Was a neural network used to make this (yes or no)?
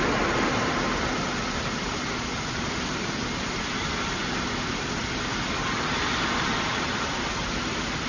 no